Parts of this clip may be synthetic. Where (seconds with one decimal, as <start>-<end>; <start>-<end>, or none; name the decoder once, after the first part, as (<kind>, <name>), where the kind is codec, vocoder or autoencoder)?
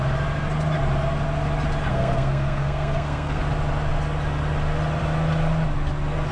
1.9-3.4 (codec, SNAC)